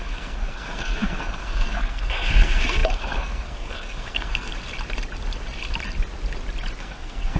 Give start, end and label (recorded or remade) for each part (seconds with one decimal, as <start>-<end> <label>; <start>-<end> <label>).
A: 0.0-4.5 remade; 4.5-6.8 recorded; 6.8-7.4 remade